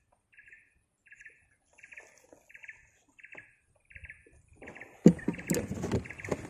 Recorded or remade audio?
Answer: recorded